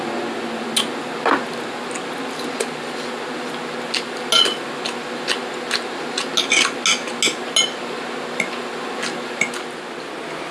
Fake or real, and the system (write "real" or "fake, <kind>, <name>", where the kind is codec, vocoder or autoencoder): real